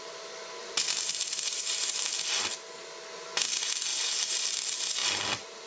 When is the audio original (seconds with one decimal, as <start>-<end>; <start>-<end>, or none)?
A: 0.0-0.6; 1.6-3.9; 4.6-5.0